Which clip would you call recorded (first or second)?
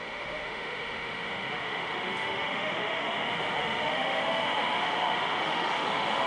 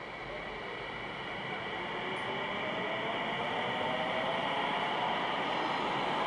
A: second